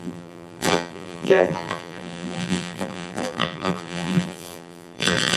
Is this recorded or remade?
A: remade